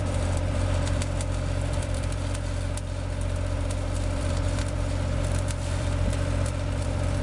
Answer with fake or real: fake